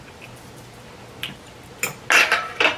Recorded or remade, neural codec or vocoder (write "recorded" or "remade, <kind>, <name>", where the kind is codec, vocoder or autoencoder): recorded